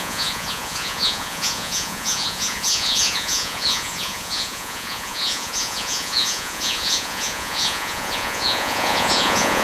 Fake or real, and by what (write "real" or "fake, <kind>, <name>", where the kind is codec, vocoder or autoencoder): fake, vocoder, Vocos